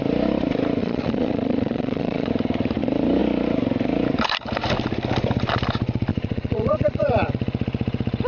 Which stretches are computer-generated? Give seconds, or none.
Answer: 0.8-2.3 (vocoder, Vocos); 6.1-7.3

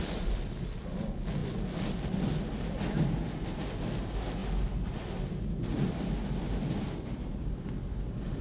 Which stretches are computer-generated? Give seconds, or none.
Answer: none